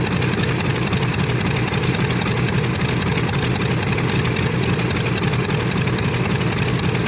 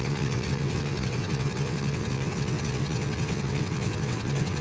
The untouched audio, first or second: first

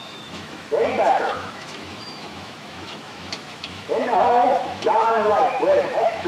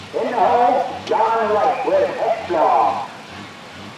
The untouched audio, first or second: second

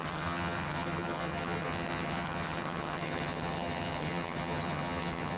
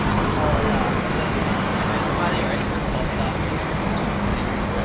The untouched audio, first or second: second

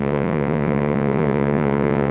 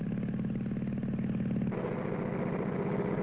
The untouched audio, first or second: second